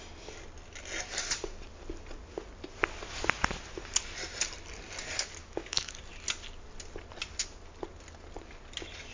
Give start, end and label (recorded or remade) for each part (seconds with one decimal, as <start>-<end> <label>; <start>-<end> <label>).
0.0-5.4 recorded; 5.4-5.9 remade; 5.9-9.1 recorded